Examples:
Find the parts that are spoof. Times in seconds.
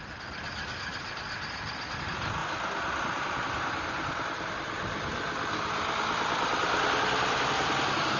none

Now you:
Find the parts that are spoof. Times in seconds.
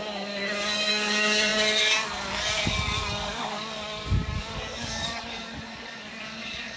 0.0-6.8 (codec, DAC)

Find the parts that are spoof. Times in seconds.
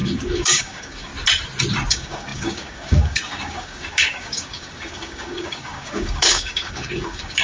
0.0-1.1 (codec, DAC); 1.9-7.4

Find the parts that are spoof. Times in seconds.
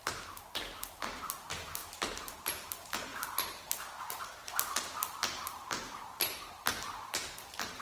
none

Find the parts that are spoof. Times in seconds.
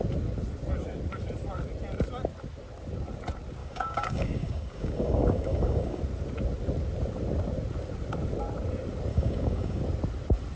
3.6-6.0 (codec, DAC); 9.1-9.8